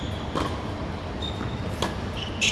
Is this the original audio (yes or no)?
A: yes